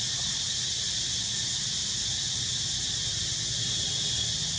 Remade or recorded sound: recorded